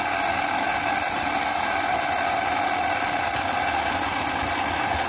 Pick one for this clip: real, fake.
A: real